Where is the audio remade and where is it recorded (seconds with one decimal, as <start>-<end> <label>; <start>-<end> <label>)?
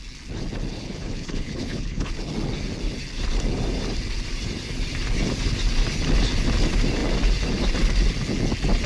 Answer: 0.0-0.7 recorded; 0.7-2.3 remade; 2.3-8.9 recorded